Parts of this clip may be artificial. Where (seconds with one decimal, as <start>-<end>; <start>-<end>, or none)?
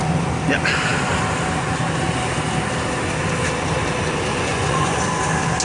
4.3-5.0